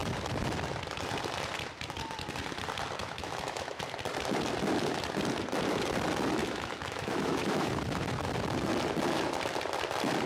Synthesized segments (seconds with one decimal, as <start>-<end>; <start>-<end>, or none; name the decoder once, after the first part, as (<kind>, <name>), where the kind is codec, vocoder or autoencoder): 3.0-3.8 (autoencoder, DAC-VAE); 6.4-7.7